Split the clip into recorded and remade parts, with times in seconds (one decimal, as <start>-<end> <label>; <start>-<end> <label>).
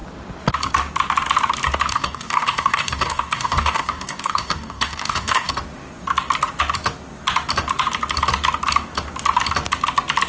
0.0-1.9 recorded; 1.9-5.5 remade; 5.5-10.3 recorded